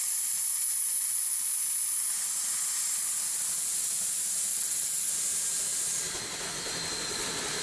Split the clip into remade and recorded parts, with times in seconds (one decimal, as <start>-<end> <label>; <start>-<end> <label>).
0.0-4.5 recorded; 4.5-5.1 remade; 5.1-7.6 recorded